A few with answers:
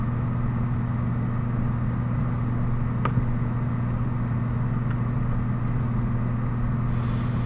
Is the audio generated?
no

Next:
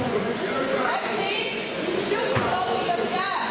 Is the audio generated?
yes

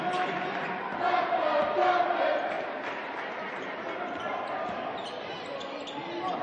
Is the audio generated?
no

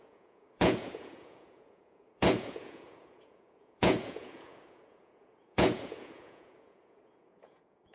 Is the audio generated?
yes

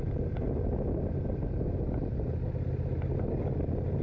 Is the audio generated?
no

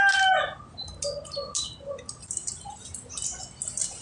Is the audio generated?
no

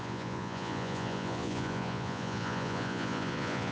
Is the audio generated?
yes